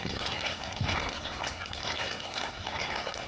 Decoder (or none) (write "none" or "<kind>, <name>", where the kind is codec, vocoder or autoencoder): codec, SNAC